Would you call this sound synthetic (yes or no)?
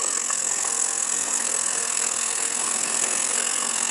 yes